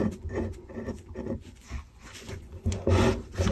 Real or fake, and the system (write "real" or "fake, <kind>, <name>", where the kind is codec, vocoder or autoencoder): fake, vocoder, Vocos